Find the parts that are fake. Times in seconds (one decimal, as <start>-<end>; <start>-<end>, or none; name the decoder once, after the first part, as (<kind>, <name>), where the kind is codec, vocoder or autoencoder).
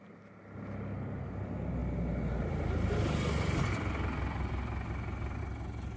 none